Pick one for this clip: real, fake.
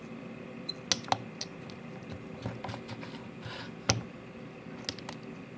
real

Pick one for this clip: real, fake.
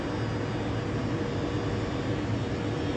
real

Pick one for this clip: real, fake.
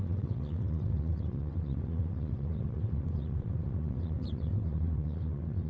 fake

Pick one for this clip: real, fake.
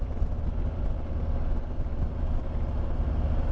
real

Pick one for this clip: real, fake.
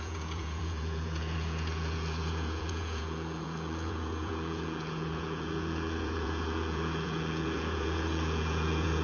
fake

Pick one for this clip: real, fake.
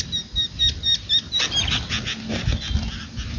real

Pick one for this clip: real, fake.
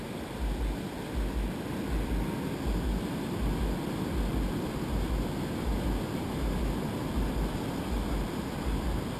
real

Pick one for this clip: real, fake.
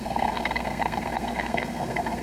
fake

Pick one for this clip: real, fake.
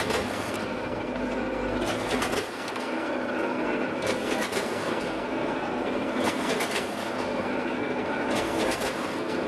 fake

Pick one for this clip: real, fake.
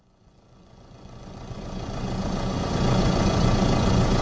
fake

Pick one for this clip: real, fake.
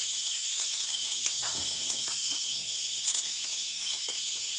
fake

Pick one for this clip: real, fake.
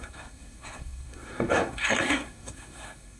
fake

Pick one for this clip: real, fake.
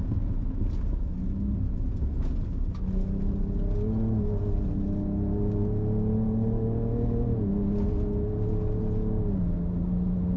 real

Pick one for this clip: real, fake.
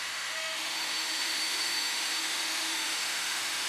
fake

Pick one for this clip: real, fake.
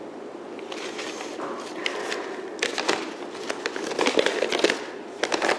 real